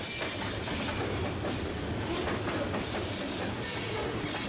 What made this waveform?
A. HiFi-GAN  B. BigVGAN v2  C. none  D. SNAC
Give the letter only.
C